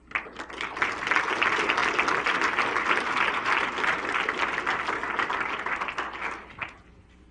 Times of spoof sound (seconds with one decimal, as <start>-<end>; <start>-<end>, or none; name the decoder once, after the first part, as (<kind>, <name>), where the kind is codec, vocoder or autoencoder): none